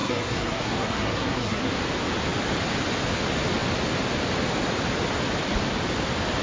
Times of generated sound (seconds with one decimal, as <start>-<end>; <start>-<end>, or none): 0.0-1.7